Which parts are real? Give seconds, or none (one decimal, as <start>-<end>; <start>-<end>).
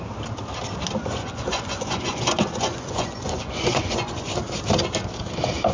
0.0-1.0; 4.3-5.7